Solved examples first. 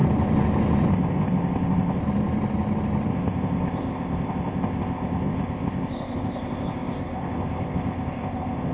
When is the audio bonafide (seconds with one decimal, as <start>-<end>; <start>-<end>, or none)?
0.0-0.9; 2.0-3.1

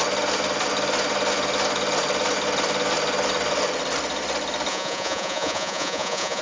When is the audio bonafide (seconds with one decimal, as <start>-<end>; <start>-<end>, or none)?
0.0-4.7

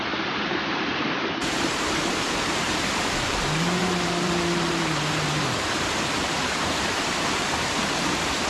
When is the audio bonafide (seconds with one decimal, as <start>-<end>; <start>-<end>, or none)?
none